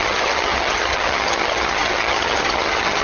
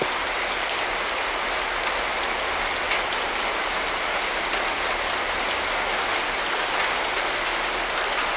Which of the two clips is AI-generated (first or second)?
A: first